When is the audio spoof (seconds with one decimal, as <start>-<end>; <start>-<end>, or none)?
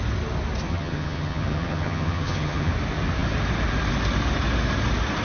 0.7-2.7